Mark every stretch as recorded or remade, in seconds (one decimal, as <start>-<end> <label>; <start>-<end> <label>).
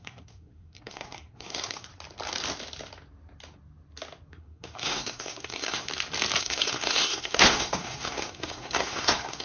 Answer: 0.0-1.9 remade; 1.9-4.3 recorded; 4.3-5.9 remade; 5.9-6.4 recorded; 6.4-9.4 remade